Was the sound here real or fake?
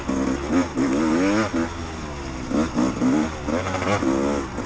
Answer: real